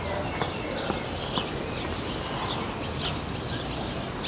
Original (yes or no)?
yes